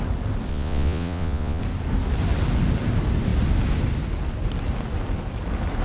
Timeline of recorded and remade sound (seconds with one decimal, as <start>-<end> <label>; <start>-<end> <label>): 0.0-0.5 recorded; 0.5-1.6 remade; 1.6-5.8 recorded

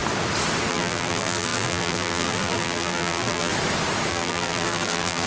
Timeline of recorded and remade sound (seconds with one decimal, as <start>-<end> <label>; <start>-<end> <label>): 0.0-0.7 recorded; 0.7-3.5 remade; 3.5-4.1 recorded; 4.1-5.3 remade